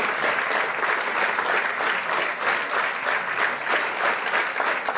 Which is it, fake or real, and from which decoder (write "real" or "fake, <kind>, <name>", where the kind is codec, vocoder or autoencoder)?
real